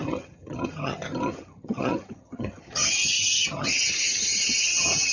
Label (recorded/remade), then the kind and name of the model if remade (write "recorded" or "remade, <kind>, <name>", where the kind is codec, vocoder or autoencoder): remade, vocoder, HiFi-GAN